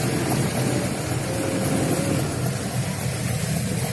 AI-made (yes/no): no